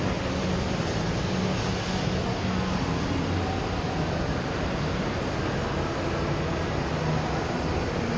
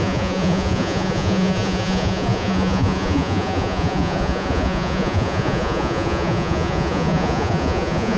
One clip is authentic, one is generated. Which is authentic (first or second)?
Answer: first